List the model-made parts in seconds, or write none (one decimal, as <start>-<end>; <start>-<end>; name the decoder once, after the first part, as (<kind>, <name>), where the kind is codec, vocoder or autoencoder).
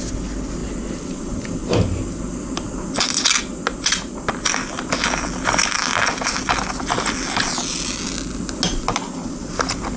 none